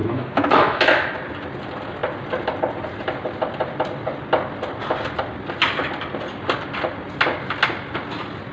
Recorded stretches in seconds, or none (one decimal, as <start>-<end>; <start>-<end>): 1.1-8.5

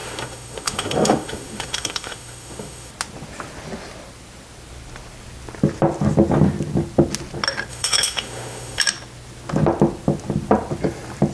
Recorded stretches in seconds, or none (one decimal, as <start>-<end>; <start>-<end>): 2.9-7.7; 8.8-11.3

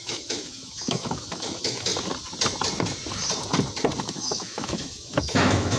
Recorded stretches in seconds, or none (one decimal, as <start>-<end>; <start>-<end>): 1.9-4.0

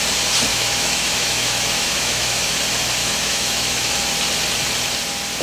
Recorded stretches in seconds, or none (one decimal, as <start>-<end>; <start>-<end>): 0.0-0.5; 2.6-3.0; 3.9-5.4

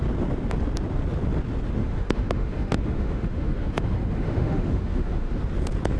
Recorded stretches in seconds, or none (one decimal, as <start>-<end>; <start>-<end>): 0.0-1.8; 5.4-6.0

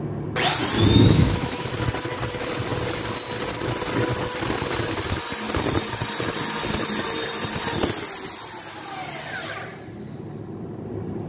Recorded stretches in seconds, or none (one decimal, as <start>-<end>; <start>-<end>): 0.0-0.9; 1.7-11.3